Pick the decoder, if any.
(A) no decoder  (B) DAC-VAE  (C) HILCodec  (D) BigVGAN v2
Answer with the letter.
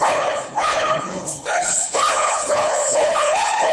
C